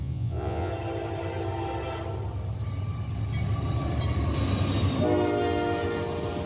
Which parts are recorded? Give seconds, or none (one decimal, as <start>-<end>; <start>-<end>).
0.7-6.5